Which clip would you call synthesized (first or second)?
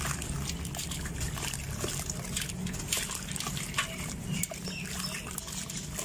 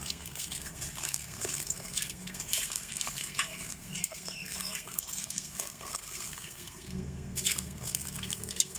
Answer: second